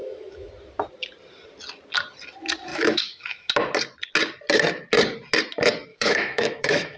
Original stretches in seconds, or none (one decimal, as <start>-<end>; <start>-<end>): 0.5-2.7; 3.5-5.9